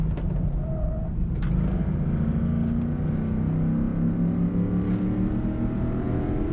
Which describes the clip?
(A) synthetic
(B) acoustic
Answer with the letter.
B